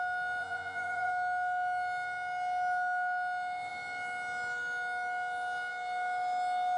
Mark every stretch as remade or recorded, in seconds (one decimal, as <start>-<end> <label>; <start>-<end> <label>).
0.0-0.4 recorded; 0.4-1.1 remade; 1.1-6.8 recorded